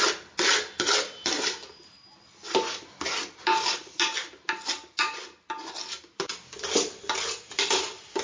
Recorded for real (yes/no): yes